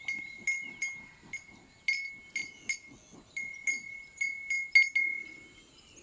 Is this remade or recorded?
recorded